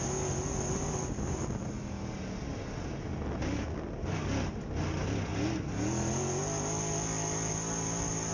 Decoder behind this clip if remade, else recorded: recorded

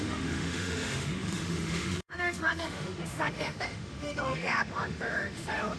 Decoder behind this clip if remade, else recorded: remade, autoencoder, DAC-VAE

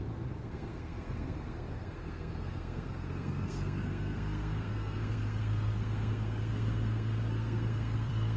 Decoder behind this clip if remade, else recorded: remade, codec, SNAC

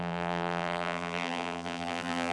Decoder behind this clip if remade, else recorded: remade, vocoder, BigVGAN v2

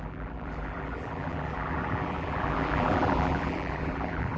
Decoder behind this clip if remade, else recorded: remade, vocoder, BigVGAN v2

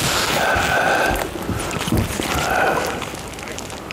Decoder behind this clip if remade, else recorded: recorded